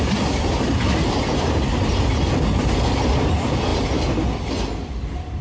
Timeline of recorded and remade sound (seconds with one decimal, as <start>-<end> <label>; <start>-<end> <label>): 0.0-5.4 recorded